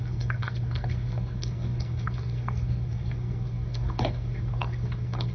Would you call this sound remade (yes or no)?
yes